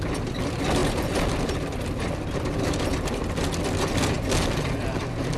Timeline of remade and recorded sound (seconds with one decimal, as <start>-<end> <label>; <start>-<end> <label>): 0.0-5.4 recorded